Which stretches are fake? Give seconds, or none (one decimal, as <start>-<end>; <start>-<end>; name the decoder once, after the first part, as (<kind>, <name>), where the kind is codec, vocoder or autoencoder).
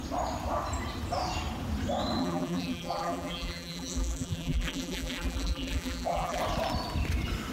2.2-6.4 (vocoder, BigVGAN v2)